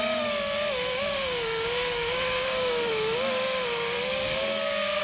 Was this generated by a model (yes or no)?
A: yes